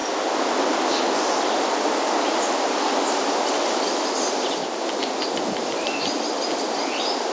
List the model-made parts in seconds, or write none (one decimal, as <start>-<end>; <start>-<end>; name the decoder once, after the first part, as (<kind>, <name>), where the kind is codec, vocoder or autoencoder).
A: none

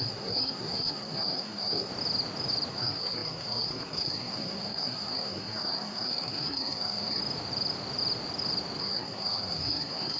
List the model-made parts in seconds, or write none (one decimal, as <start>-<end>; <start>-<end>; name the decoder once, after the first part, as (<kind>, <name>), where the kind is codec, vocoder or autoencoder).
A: 0.0-1.9 (codec, SNAC); 2.7-7.2; 8.8-10.2

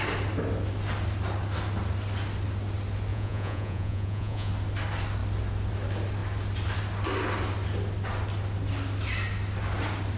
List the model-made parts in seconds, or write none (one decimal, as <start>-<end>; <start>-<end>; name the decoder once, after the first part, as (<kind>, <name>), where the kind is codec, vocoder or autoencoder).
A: 3.1-4.5 (vocoder, Vocos)